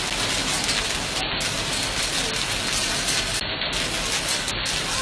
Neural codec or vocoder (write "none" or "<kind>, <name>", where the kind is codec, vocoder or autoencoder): none